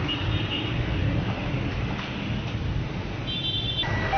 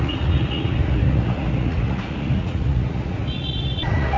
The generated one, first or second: second